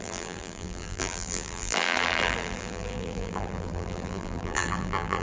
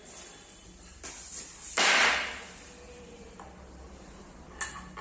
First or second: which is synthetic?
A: first